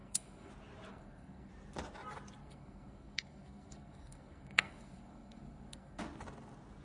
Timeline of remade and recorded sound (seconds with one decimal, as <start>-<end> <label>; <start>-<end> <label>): 0.0-0.5 remade; 0.5-0.9 recorded; 0.9-1.5 remade; 1.5-2.4 recorded; 2.4-6.0 remade; 6.0-6.8 recorded